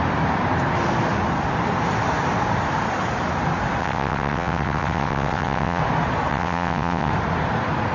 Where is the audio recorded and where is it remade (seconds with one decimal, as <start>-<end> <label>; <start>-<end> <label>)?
0.0-3.8 recorded; 3.8-5.8 remade; 5.8-6.3 recorded; 6.3-7.1 remade; 7.1-7.9 recorded